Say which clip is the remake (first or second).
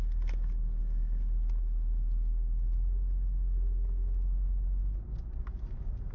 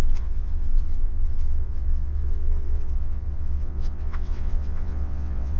second